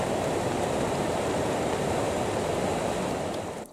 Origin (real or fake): real